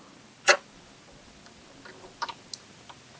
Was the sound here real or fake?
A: real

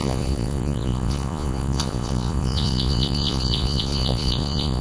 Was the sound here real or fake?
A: fake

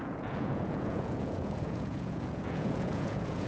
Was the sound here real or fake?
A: fake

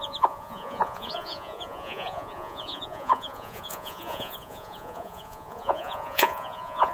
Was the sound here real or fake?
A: fake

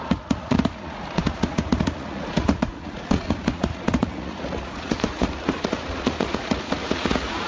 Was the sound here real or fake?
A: fake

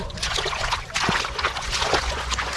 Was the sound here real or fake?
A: fake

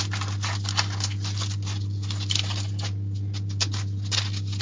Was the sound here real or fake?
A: real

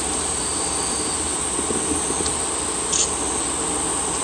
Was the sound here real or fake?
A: real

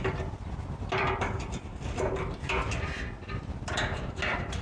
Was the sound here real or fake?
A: real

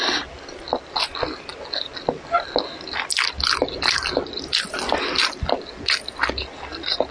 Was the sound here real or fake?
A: real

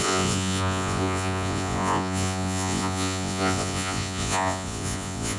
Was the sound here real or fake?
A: fake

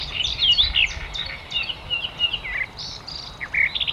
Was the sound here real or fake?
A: real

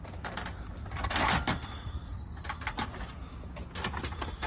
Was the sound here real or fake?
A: real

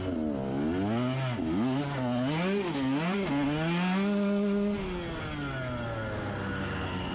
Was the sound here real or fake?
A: real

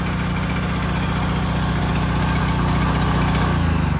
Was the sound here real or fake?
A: real